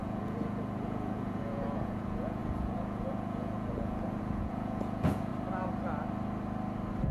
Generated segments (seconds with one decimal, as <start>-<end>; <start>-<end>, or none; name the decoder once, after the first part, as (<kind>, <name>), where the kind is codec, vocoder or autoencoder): 0.0-5.3 (vocoder, Vocos)